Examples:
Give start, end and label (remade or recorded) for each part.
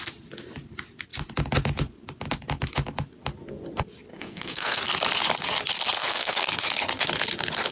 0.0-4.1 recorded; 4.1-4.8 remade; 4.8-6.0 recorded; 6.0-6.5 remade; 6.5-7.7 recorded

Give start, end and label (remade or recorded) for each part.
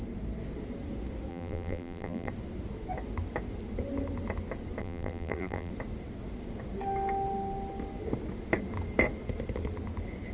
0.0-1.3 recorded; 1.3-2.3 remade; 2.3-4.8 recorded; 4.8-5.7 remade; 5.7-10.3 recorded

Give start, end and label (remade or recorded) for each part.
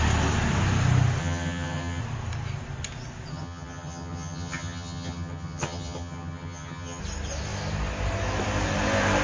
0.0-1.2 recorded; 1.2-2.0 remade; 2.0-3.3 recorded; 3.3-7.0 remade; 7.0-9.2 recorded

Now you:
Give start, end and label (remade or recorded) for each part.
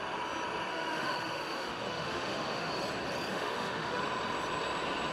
0.0-0.7 recorded; 0.7-2.7 remade; 2.7-3.3 recorded; 3.3-4.0 remade; 4.0-5.1 recorded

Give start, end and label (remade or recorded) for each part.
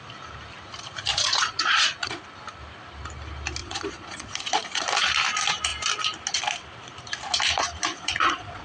0.0-1.1 recorded; 1.1-2.2 remade; 2.2-3.6 recorded; 3.6-4.8 remade; 4.8-7.9 recorded; 7.9-8.6 remade